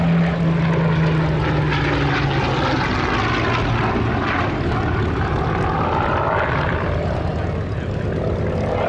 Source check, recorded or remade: recorded